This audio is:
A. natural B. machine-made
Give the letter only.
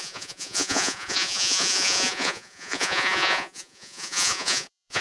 B